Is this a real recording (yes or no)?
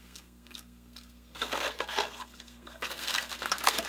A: no